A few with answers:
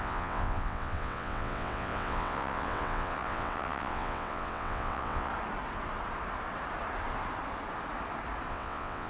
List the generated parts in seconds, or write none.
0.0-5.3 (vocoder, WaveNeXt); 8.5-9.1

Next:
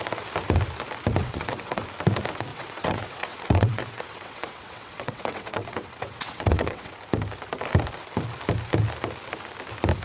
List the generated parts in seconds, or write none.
1.2-1.8 (vocoder, WaveNeXt); 2.5-6.9

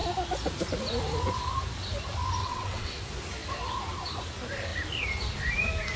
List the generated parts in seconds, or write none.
2.4-3.0 (vocoder, WaveNeXt)

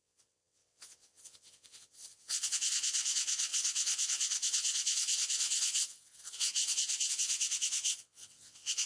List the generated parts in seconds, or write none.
0.0-8.9 (vocoder, WaveNeXt)

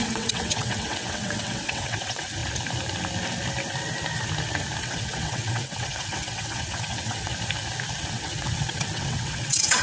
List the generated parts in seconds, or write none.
0.0-2.4 (vocoder, WaveNeXt); 4.8-7.3; 8.1-9.8

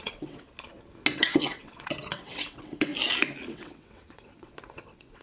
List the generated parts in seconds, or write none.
0.0-0.5 (vocoder, WaveNeXt); 1.1-2.9; 3.5-5.2